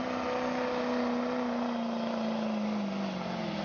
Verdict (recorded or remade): recorded